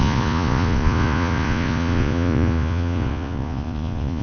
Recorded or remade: remade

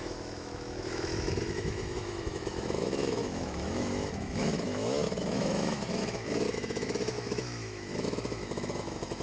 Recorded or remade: remade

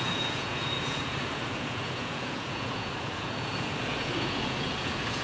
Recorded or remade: remade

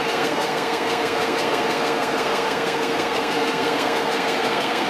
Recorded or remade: remade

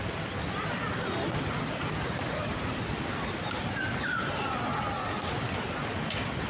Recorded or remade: recorded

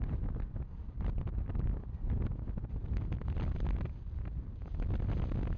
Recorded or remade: recorded